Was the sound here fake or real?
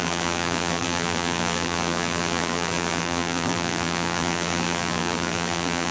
fake